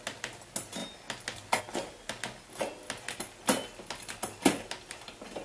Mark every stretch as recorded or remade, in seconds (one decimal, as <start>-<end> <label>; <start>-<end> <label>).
0.0-5.4 recorded